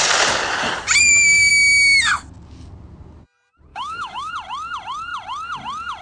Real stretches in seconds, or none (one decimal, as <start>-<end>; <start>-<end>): 0.0-1.0; 1.5-3.7; 4.3-6.0